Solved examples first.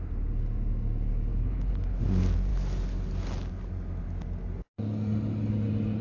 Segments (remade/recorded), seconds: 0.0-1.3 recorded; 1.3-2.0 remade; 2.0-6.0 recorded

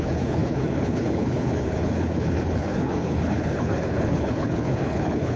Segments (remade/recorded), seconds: 0.0-5.4 remade

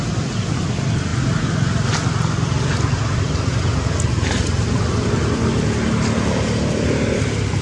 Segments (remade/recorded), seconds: 0.0-7.6 recorded

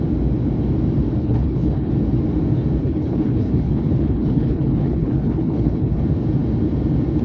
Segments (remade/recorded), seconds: 0.0-1.2 recorded; 1.2-1.9 remade; 1.9-2.8 recorded; 2.8-6.0 remade; 6.0-7.2 recorded

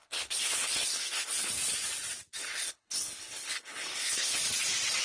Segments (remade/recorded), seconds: 0.0-1.5 remade; 1.5-2.4 recorded; 2.4-4.4 remade; 4.4-5.0 recorded

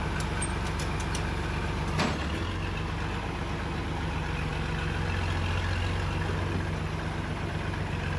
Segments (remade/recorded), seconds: 0.0-8.2 recorded